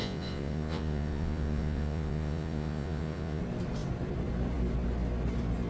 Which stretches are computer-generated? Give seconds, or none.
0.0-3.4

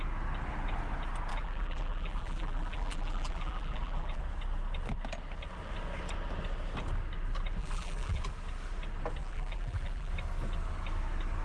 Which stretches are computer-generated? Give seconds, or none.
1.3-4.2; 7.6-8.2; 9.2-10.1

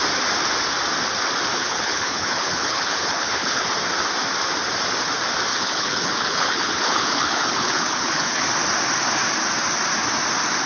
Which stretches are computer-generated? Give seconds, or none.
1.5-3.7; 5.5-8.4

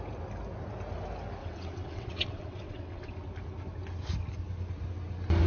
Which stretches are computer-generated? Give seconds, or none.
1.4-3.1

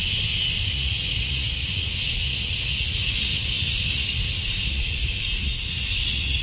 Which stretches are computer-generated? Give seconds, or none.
0.7-6.4